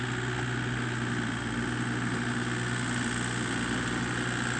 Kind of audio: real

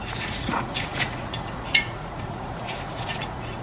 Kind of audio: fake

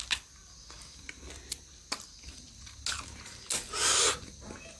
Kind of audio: real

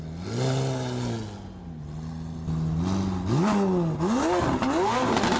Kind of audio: real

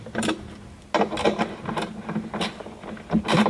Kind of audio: real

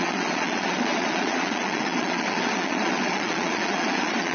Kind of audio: fake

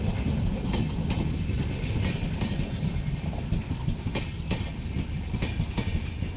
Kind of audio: real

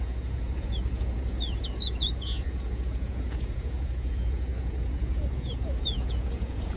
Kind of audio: fake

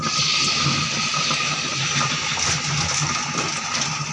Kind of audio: real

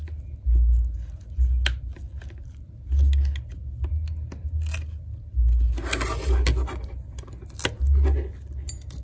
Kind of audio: real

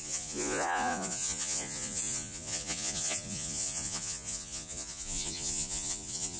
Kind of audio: fake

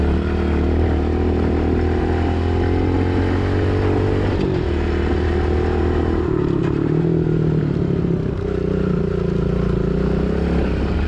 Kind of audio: real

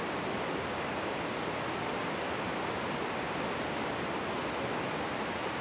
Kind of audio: real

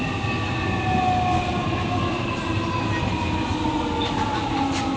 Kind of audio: real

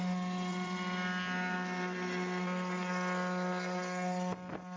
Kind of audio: real